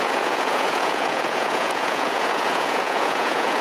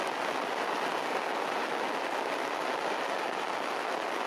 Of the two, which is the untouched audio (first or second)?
second